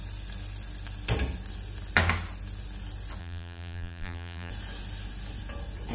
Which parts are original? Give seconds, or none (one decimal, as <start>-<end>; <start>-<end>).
0.0-3.2; 4.5-5.9